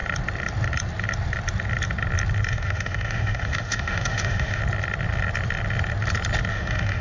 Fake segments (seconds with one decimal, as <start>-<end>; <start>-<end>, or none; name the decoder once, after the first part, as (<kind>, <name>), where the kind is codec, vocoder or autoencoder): 2.5-4.6 (autoencoder, DAC-VAE); 6.5-7.0